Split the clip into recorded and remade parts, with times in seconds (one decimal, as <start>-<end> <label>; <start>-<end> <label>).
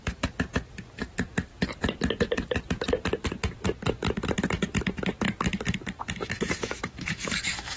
0.0-6.2 recorded; 6.2-7.8 remade